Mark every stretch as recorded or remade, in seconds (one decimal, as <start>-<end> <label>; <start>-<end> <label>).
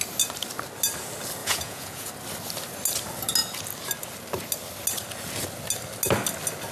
0.0-1.4 recorded; 1.4-2.1 remade; 2.1-6.7 recorded